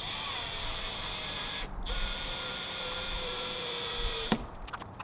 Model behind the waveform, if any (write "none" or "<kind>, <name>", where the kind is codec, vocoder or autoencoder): vocoder, BigVGAN v2